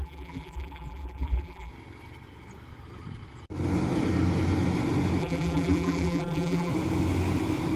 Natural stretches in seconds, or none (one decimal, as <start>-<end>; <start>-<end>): 1.7-5.2; 6.7-7.8